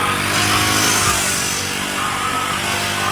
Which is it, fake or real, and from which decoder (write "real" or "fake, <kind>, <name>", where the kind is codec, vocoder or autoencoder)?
real